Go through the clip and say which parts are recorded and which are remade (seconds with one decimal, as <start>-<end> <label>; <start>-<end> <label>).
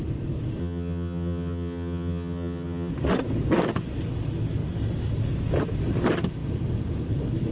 0.0-0.6 recorded; 0.6-2.9 remade; 2.9-7.5 recorded